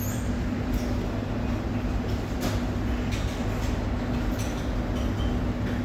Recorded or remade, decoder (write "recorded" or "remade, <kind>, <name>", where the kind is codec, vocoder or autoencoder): recorded